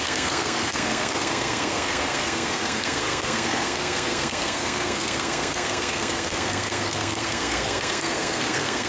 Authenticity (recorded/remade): remade